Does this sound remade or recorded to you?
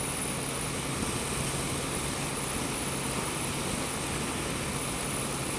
recorded